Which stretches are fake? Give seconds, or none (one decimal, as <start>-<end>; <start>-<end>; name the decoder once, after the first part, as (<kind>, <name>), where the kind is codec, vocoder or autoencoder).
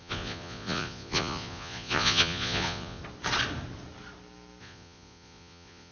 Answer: 0.0-3.0 (vocoder, Vocos); 4.6-5.9